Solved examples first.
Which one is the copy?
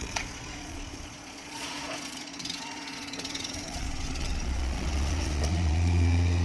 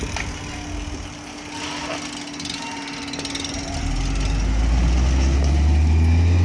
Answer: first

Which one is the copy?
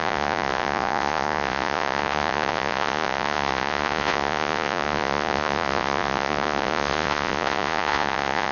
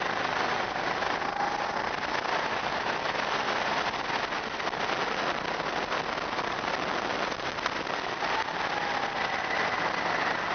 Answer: first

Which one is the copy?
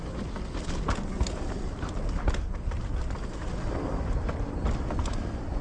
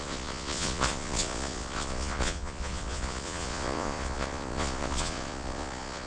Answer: second